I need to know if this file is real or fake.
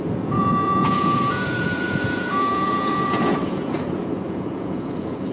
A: fake